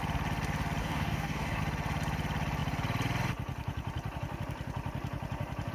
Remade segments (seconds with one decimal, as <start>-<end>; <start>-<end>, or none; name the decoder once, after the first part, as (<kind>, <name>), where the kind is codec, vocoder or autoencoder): 0.8-1.6 (codec, DAC)

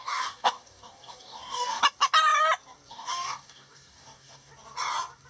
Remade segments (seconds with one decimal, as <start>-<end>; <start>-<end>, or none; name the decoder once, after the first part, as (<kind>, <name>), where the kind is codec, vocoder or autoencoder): 0.0-1.8 (codec, DAC); 2.9-4.5

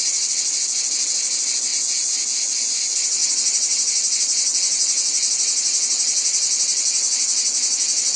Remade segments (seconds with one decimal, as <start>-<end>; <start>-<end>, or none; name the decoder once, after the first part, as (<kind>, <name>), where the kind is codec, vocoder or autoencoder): none